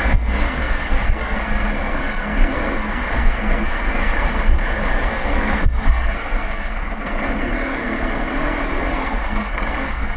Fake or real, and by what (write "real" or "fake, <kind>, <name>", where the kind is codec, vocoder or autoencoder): fake, codec, SNAC